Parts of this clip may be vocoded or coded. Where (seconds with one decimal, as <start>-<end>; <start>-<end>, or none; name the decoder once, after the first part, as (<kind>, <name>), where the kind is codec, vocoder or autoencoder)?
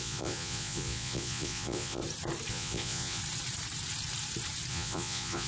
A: 0.0-2.0 (vocoder, Vocos); 2.5-3.2; 4.7-5.5